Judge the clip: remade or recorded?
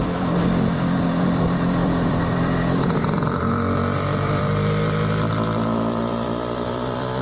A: remade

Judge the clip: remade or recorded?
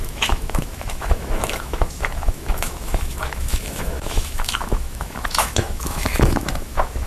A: remade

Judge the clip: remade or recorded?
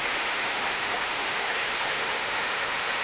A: remade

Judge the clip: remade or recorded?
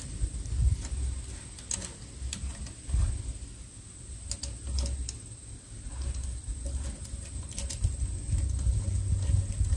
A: recorded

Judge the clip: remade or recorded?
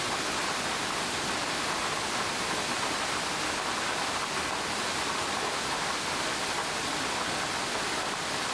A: recorded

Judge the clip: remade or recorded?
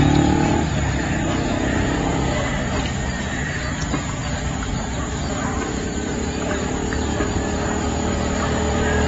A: recorded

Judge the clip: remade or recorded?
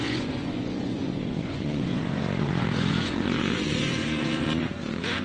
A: remade